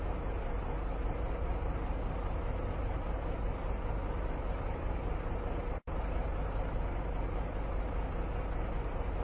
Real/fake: real